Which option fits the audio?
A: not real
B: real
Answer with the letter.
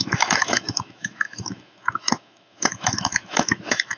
A